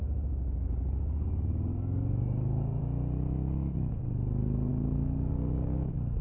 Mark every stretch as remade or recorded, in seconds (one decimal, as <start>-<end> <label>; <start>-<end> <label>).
0.0-1.2 recorded; 1.2-2.8 remade; 2.8-3.9 recorded; 3.9-6.2 remade

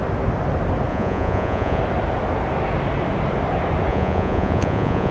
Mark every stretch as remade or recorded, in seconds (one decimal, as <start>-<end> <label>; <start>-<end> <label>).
0.0-0.9 recorded; 0.9-1.8 remade; 1.8-3.9 recorded; 3.9-5.1 remade